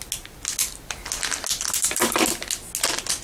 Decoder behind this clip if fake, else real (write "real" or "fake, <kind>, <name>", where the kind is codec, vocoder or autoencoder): real